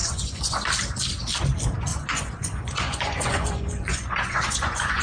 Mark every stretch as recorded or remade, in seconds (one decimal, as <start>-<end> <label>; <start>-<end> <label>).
0.0-0.7 remade; 0.7-1.9 recorded; 1.9-5.0 remade